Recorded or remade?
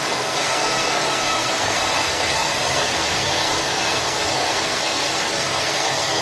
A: remade